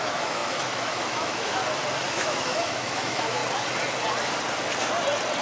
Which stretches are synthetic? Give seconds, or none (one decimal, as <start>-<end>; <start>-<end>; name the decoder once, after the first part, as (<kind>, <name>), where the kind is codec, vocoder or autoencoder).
0.0-1.6 (autoencoder, DAC-VAE); 2.1-3.4